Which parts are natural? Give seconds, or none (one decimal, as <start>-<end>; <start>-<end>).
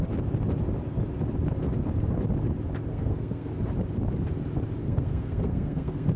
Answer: 0.0-2.9; 3.5-4.8